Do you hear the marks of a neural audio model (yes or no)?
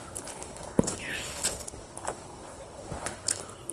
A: yes